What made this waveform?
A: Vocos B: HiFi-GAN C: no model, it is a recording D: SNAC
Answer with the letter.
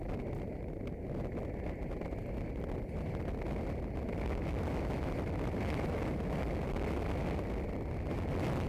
C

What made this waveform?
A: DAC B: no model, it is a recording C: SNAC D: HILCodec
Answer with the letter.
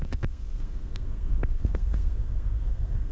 C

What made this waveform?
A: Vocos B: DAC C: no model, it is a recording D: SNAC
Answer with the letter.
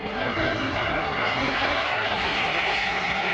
D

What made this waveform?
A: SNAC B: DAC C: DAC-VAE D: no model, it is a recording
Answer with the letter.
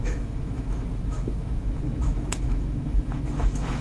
C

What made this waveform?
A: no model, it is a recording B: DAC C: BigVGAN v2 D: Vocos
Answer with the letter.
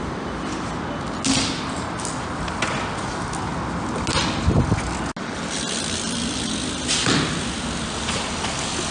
A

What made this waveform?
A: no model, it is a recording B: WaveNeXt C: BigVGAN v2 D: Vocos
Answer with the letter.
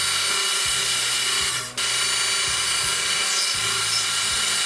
A